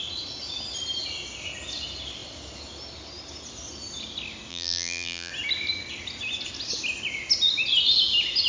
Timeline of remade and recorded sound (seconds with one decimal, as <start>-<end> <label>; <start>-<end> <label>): 0.0-4.5 recorded; 4.5-5.3 remade; 5.3-8.5 recorded